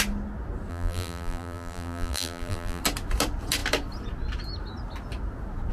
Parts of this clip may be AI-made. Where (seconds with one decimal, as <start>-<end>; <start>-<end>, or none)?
0.7-2.8